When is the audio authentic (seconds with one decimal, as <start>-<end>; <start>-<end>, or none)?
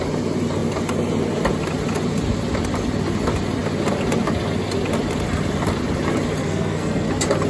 0.0-6.4; 7.1-7.5